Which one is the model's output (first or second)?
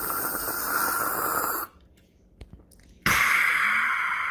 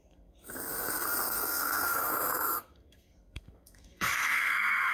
second